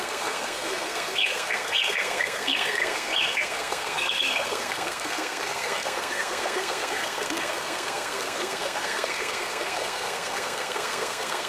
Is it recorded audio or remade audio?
remade